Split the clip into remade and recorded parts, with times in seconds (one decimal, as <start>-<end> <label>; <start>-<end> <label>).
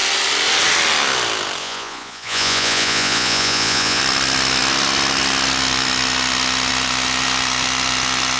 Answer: 0.0-1.6 recorded; 1.6-4.0 remade; 4.0-8.4 recorded